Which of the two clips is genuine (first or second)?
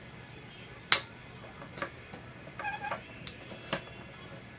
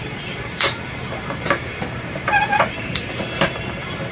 first